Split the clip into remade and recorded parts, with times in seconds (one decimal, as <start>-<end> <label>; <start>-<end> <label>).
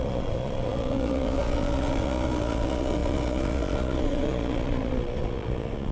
0.0-5.9 remade